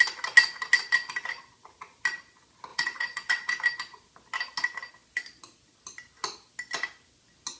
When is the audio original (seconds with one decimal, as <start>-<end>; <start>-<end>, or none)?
0.0-2.7; 3.6-7.6